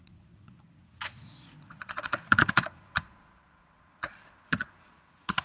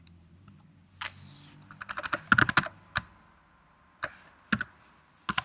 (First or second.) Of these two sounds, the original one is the second